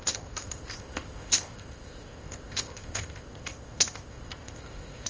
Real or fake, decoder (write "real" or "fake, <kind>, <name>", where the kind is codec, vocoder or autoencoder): fake, codec, ZipCodec